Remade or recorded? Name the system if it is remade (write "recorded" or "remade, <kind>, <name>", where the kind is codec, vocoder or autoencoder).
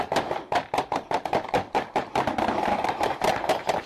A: recorded